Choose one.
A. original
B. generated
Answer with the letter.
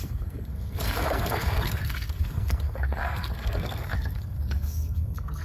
B